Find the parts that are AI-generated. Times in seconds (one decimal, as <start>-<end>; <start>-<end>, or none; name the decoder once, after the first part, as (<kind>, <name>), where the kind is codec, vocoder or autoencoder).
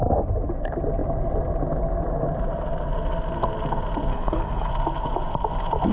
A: 4.1-4.7 (codec, HILCodec)